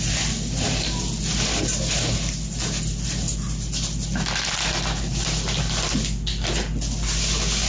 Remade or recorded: recorded